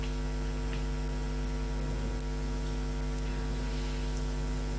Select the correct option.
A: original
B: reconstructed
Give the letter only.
A